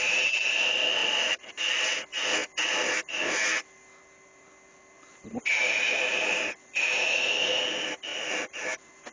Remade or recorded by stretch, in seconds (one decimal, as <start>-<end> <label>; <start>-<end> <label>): 0.0-1.0 recorded; 1.0-1.6 remade; 1.6-8.1 recorded; 8.1-8.6 remade; 8.6-9.1 recorded